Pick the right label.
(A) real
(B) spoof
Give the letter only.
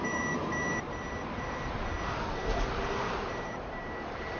B